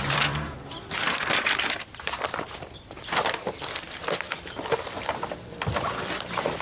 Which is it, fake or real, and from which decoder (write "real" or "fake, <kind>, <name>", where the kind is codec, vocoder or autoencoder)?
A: fake, vocoder, BigVGAN v2